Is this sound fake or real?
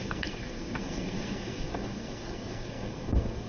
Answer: fake